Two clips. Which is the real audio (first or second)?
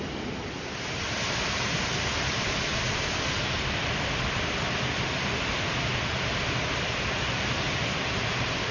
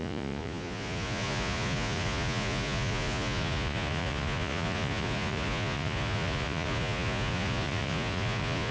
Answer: first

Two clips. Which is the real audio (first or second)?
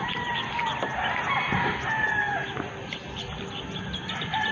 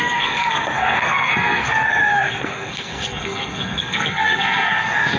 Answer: first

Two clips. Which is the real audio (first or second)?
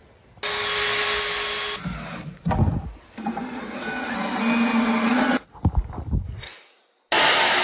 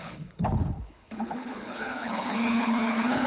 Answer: first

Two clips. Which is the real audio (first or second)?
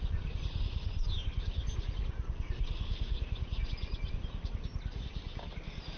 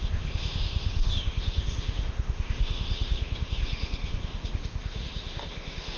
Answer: first